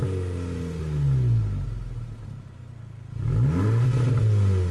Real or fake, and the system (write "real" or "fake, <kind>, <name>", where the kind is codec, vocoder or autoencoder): real